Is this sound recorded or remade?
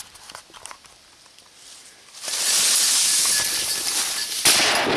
recorded